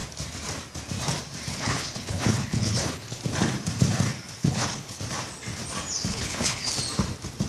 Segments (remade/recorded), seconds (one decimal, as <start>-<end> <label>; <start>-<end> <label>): 0.0-1.5 recorded; 1.5-3.2 remade; 3.2-4.4 recorded; 4.4-5.0 remade; 5.0-6.1 recorded; 6.1-6.7 remade; 6.7-7.5 recorded